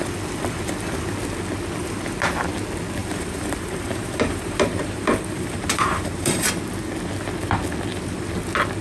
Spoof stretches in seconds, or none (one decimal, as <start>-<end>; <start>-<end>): 3.0-6.6